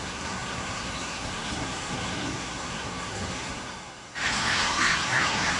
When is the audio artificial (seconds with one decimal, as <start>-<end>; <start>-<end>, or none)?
0.0-5.6